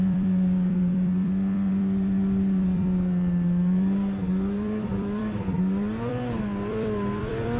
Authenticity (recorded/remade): remade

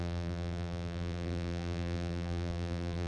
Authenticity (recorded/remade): remade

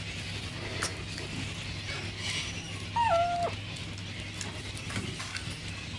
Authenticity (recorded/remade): recorded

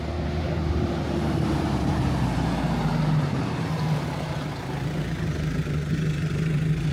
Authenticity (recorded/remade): remade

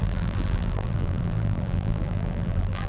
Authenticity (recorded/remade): remade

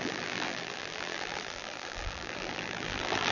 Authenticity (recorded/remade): remade